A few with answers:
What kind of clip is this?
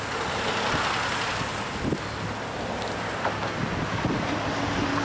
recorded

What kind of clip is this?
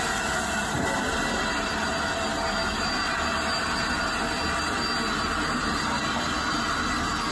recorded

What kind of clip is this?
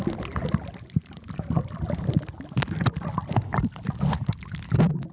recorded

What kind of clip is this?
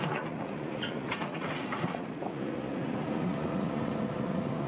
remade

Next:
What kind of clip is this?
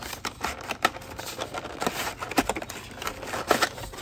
remade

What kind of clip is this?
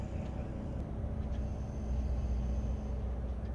recorded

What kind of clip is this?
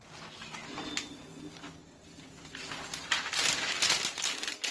recorded